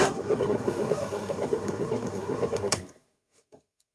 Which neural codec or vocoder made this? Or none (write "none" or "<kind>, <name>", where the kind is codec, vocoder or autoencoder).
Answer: codec, SNAC